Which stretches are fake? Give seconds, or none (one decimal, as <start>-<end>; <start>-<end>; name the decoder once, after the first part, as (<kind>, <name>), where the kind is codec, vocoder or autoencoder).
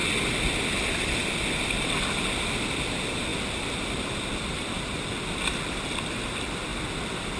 none